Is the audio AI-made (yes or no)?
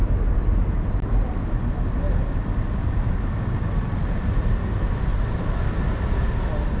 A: no